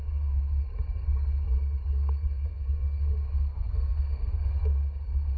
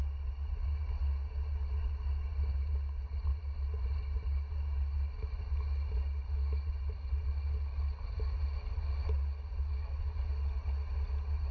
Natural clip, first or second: second